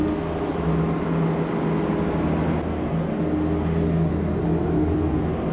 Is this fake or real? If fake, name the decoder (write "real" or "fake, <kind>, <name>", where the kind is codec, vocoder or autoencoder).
real